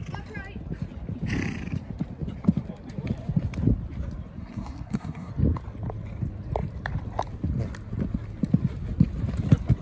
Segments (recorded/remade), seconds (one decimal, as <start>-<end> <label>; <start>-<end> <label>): 0.0-4.4 recorded; 4.4-5.3 remade; 5.3-9.8 recorded